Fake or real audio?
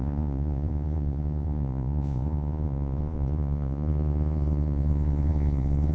fake